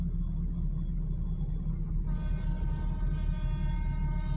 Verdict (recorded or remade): recorded